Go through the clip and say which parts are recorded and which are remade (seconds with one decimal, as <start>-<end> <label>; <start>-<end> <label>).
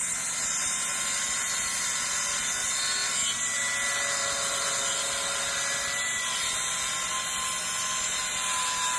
0.0-9.0 recorded